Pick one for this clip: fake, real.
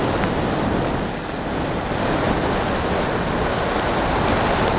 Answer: real